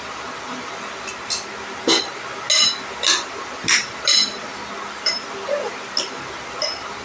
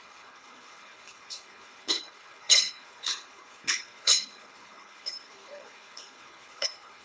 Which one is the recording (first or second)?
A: first